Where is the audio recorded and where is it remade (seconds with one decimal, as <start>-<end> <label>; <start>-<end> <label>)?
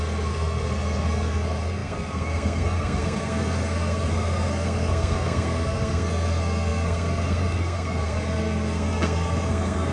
0.0-9.9 remade